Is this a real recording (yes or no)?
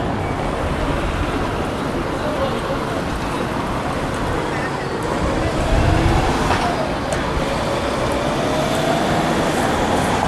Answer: yes